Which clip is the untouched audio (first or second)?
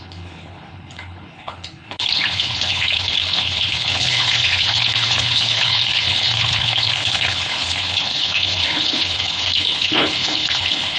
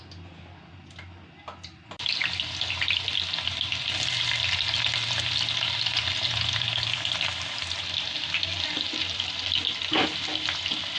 second